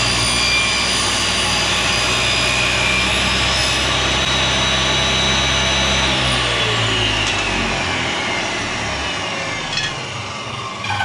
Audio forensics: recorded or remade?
recorded